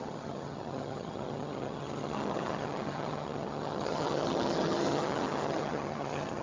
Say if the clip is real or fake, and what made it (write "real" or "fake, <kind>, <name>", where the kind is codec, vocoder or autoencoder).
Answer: fake, vocoder, HiFi-GAN